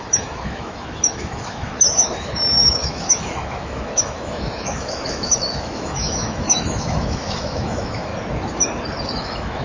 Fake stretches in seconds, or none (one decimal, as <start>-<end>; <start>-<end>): 0.0-8.1; 9.0-9.6